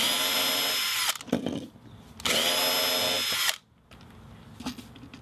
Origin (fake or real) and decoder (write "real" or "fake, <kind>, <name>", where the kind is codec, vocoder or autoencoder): real